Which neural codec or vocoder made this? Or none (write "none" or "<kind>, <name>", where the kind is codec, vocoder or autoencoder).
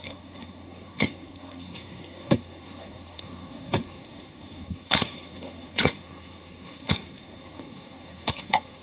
codec, SNAC